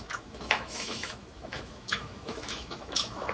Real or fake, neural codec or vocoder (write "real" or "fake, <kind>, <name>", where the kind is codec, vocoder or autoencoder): fake, autoencoder, DAC-VAE